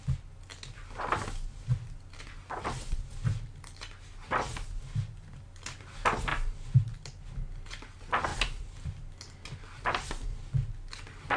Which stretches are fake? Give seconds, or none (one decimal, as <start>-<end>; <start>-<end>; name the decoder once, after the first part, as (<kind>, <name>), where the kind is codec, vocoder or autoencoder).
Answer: none

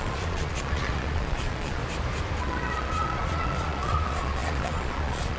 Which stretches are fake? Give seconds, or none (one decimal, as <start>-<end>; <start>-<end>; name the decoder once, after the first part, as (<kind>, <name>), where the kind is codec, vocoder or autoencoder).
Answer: 0.0-1.8 (vocoder, Vocos); 2.4-5.4

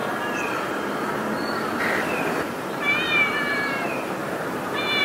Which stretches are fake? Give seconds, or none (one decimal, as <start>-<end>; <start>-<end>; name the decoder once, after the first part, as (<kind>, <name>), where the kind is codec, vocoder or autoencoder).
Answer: 0.6-4.2 (vocoder, BigVGAN v2)

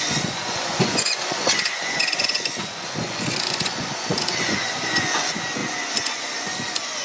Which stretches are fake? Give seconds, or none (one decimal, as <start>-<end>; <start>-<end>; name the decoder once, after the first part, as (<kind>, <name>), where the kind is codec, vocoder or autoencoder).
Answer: 0.0-7.0 (vocoder, Vocos)

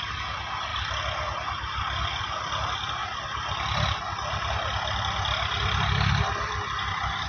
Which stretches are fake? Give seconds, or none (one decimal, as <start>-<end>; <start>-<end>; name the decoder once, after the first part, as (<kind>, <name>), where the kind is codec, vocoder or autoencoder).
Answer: none

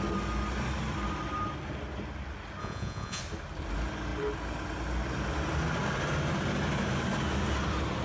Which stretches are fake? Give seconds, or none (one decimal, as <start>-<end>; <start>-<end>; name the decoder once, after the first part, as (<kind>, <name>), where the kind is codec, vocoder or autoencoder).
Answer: 2.6-3.2 (vocoder, Vocos)

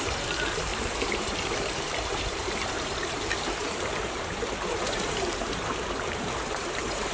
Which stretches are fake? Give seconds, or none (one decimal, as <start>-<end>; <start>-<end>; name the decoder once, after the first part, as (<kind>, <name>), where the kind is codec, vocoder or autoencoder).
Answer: 0.0-7.1 (vocoder, BigVGAN v2)

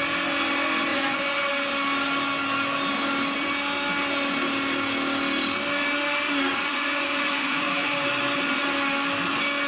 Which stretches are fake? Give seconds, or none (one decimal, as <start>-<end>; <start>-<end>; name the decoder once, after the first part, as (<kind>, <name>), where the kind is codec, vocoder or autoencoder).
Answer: 0.9-1.5 (vocoder, Vocos); 6.5-8.1